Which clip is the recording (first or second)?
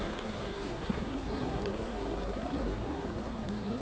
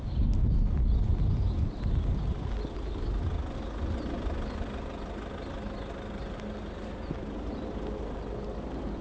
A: second